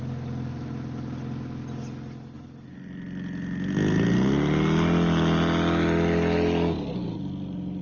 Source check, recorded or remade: recorded